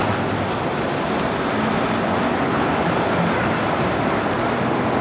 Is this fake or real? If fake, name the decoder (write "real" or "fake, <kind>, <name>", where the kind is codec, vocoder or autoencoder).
real